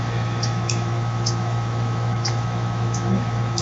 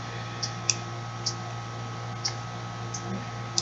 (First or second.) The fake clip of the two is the first